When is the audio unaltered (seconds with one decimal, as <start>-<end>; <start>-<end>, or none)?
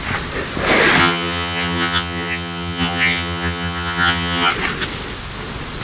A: 0.0-1.0; 4.5-5.8